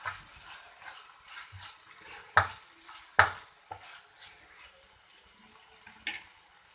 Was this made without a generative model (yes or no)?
yes